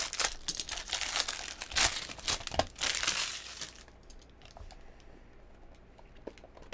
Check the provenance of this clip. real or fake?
real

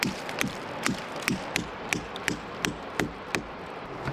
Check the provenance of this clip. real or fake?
real